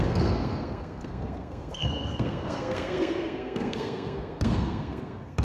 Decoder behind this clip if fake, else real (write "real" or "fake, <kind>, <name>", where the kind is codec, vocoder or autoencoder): fake, codec, SNAC